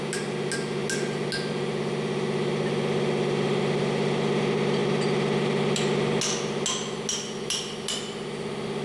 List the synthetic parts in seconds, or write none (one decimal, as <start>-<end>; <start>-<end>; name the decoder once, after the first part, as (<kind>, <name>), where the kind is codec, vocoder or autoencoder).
none